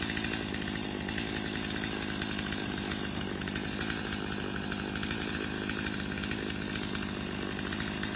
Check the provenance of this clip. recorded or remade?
recorded